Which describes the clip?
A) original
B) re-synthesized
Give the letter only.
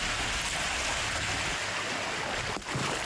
A